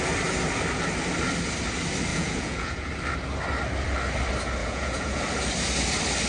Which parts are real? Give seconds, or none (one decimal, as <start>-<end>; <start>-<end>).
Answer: 0.0-2.1; 2.9-4.6; 5.2-6.3